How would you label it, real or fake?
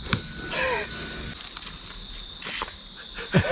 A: real